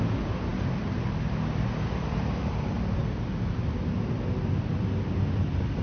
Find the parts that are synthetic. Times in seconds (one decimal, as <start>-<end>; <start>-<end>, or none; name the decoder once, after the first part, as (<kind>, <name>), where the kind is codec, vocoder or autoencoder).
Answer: none